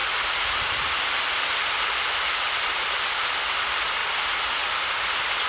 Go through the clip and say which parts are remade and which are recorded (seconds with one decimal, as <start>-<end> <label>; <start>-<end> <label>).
0.0-4.0 remade; 4.0-4.7 recorded; 4.7-5.5 remade